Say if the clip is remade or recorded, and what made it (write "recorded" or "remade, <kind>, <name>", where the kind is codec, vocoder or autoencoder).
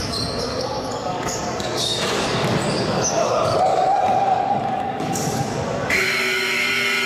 remade, codec, DAC